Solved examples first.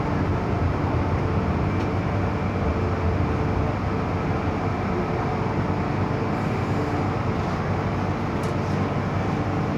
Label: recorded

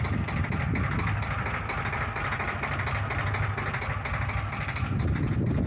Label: recorded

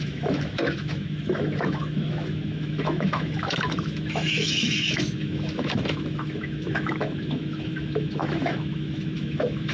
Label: remade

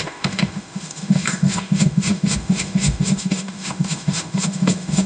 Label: remade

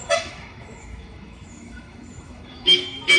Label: remade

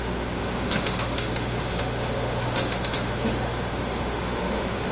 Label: remade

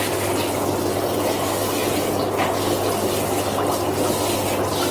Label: recorded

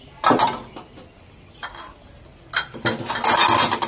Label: recorded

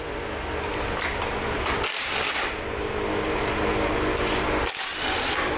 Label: recorded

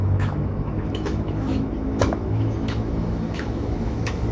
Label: remade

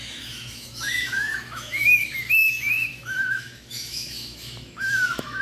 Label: remade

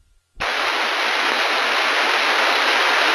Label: recorded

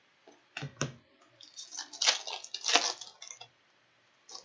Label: recorded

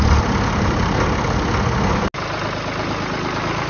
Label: recorded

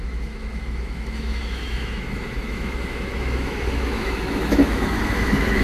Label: remade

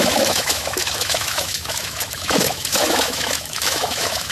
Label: remade